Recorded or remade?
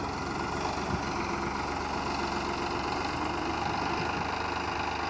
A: recorded